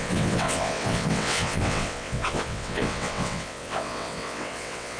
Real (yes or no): no